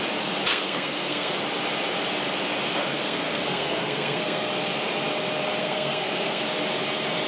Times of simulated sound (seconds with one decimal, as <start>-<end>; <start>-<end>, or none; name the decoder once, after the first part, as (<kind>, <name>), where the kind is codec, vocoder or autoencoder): 0.5-1.4 (codec, SNAC); 2.9-4.5; 5.6-6.4